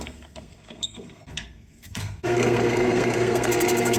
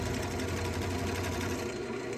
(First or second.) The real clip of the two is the second